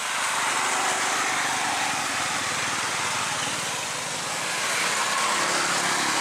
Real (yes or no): yes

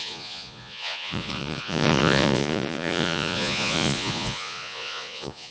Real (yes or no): no